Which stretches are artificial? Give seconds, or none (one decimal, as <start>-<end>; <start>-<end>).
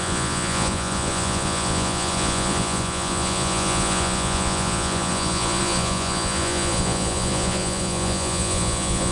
0.0-9.1